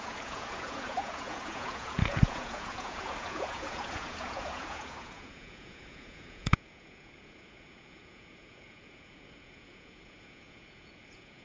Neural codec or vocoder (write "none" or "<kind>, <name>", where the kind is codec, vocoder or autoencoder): vocoder, Vocos